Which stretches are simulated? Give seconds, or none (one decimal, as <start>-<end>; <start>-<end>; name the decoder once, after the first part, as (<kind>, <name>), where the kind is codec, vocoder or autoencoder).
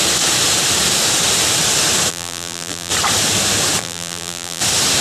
2.1-2.9 (vocoder, BigVGAN v2); 3.8-4.6